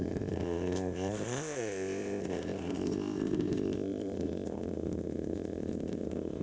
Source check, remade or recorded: remade